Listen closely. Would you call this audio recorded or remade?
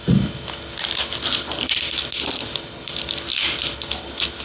recorded